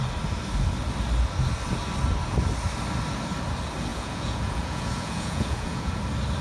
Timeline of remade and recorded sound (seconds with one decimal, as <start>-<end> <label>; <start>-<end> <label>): 0.0-3.9 recorded; 3.9-6.0 remade; 6.0-6.4 recorded